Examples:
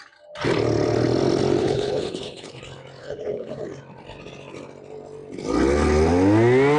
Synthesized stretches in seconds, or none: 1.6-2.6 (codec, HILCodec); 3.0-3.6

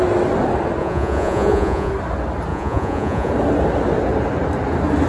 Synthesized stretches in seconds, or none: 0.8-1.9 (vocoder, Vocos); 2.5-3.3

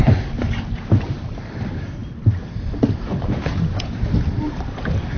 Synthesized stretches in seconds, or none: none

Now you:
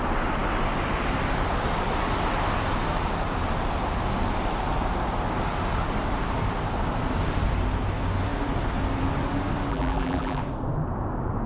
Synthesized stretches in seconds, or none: 9.7-10.4 (vocoder, BigVGAN v2)

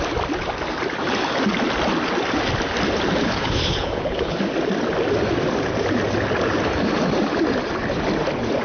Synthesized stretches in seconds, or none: 3.2-4.4 (codec, HILCodec)

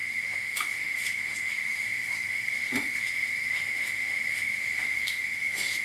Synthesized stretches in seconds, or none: 0.0-5.8 (autoencoder, DAC-VAE)